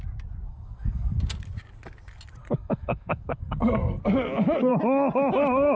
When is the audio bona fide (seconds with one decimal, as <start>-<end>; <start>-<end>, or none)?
0.0-0.5; 1.2-2.4; 4.0-5.8